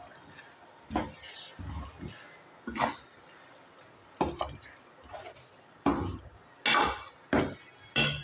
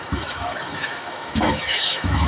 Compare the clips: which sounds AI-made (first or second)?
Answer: second